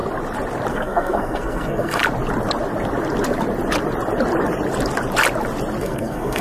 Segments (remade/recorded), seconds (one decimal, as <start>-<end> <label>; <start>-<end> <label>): 0.0-0.7 recorded; 0.7-2.0 remade; 2.0-5.8 recorded; 5.8-6.4 remade